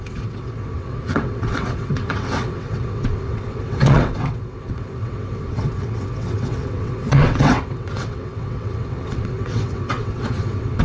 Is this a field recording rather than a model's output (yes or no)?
no